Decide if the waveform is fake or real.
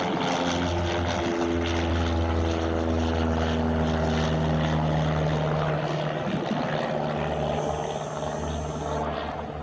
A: real